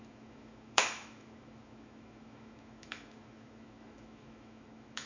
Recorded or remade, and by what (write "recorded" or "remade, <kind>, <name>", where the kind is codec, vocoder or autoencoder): remade, autoencoder, DAC-VAE